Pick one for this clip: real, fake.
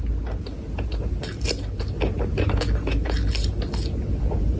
real